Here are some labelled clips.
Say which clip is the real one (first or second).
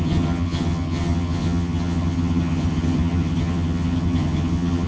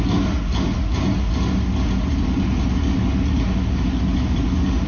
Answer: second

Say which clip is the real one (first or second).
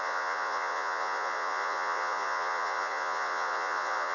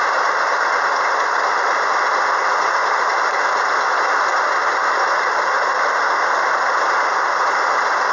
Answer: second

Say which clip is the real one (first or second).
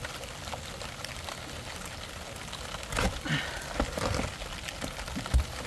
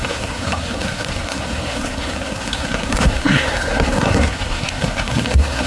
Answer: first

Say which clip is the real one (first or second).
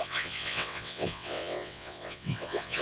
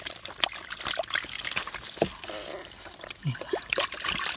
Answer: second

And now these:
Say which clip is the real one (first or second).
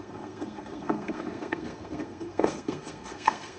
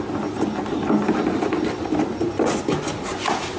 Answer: second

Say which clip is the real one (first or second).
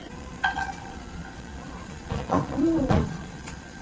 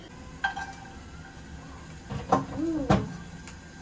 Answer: second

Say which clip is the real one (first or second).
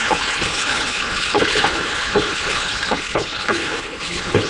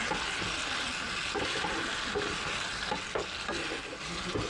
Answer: second